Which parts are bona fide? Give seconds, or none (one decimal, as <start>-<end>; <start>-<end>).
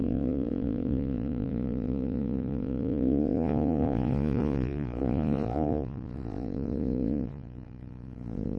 none